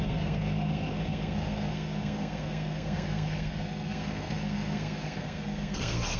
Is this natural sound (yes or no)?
no